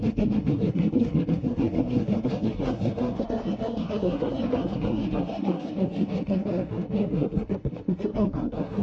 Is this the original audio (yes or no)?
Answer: no